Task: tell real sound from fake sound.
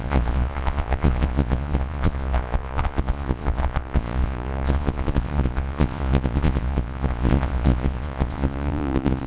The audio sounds fake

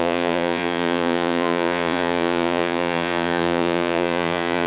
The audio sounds fake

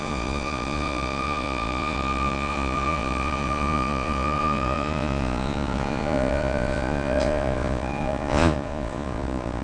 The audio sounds fake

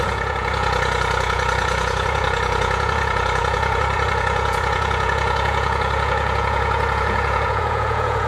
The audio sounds fake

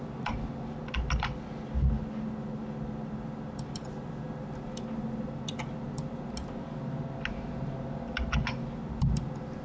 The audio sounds real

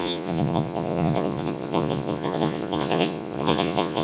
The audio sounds fake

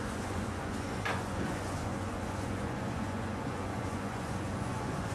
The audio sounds fake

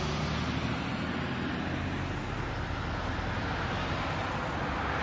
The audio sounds real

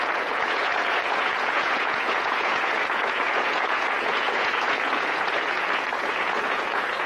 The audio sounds fake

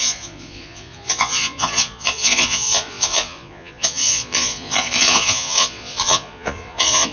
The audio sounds fake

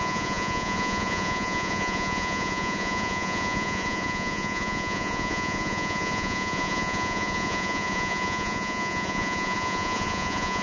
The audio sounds fake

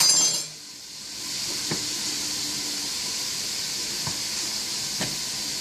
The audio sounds real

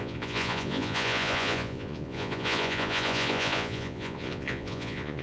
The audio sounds fake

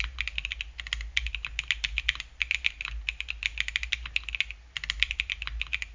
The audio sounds real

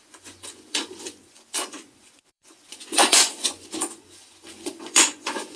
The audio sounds fake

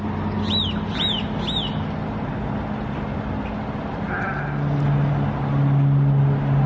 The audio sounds real